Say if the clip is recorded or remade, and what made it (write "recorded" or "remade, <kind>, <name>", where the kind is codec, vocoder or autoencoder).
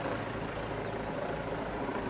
recorded